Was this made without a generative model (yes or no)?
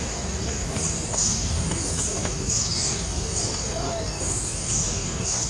no